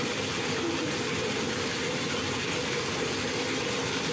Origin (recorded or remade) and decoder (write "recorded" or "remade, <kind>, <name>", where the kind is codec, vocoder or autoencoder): recorded